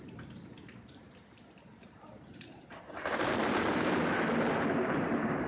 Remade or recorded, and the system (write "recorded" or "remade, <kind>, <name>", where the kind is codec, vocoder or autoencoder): remade, vocoder, BigVGAN v2